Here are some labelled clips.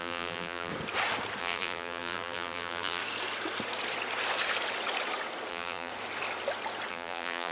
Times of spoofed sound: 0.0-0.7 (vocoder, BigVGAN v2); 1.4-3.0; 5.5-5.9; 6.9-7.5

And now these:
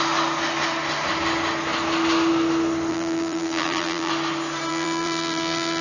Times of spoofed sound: 2.9-4.1 (vocoder, BigVGAN v2); 4.7-5.8

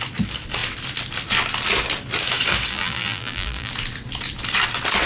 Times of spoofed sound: 2.7-3.7 (vocoder, BigVGAN v2)

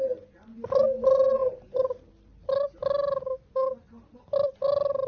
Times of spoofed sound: none

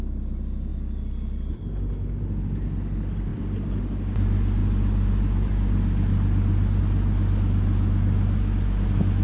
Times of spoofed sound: 3.3-3.8 (vocoder, BigVGAN v2); 4.6-6.8